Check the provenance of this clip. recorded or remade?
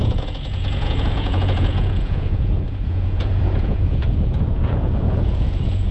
remade